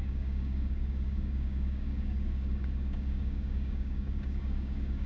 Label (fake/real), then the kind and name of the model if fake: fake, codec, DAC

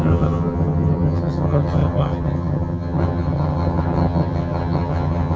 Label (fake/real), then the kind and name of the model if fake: fake, vocoder, HiFi-GAN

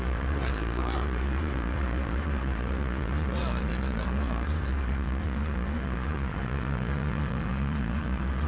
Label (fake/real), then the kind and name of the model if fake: fake, vocoder, Vocos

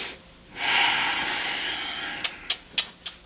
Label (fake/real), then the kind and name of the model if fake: real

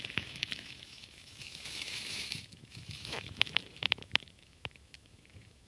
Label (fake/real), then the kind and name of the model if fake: fake, autoencoder, DAC-VAE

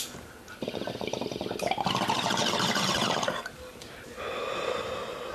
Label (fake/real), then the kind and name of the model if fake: real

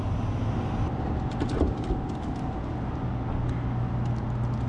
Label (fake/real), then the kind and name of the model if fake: real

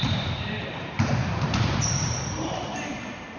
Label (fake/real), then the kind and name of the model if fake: fake, vocoder, BigVGAN v2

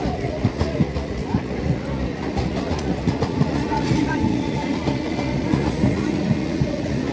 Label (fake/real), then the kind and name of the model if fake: fake, vocoder, Vocos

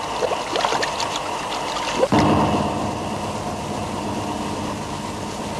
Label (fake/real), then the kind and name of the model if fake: real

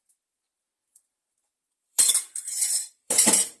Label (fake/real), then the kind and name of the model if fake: fake, vocoder, BigVGAN v2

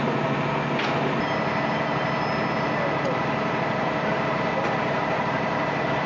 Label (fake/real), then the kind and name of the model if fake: real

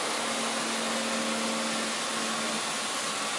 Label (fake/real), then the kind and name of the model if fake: real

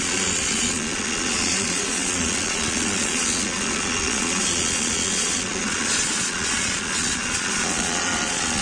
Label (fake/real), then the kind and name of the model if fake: fake, vocoder, Vocos